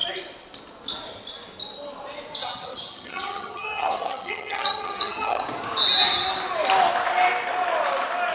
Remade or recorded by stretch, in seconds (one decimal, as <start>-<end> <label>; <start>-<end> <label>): 0.0-2.4 recorded; 2.4-5.4 remade; 5.4-8.3 recorded

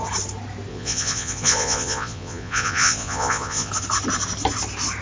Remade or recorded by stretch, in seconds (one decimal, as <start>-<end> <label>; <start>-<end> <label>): 0.0-0.7 recorded; 0.7-3.7 remade; 3.7-5.0 recorded

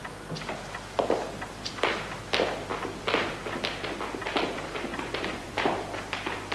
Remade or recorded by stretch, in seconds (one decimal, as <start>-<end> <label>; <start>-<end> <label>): 0.0-4.9 recorded; 4.9-5.6 remade; 5.6-6.5 recorded